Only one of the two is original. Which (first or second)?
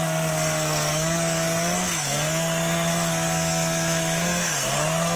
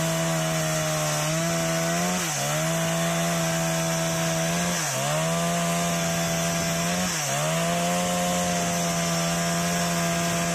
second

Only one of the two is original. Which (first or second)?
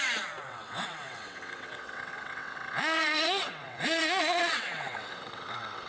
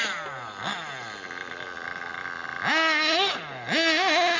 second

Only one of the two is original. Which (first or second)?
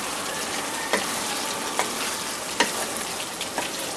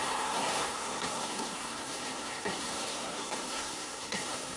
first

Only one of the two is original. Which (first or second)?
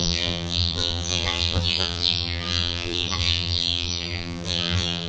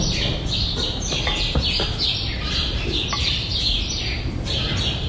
second